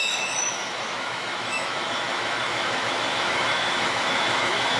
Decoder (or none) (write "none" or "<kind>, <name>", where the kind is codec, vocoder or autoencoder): autoencoder, DAC-VAE